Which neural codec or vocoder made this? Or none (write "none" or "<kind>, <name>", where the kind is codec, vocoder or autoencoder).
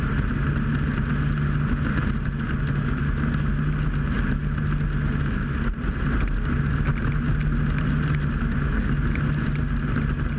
none